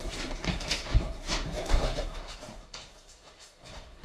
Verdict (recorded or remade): remade